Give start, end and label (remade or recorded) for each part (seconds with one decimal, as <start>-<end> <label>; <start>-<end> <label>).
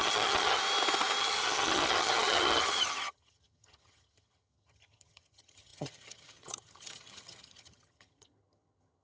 0.0-0.6 remade; 0.6-1.2 recorded; 1.2-9.0 remade